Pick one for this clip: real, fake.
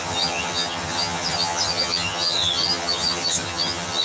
fake